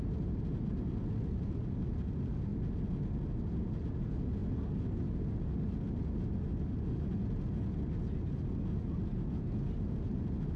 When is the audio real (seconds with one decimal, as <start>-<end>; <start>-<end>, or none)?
0.0-10.6